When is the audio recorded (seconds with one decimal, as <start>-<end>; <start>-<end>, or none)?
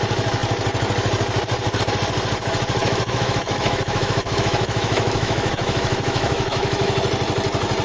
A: 0.0-2.8; 7.0-7.8